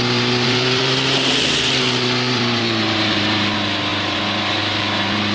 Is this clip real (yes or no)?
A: no